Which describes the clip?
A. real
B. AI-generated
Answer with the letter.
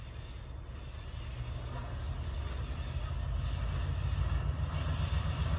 A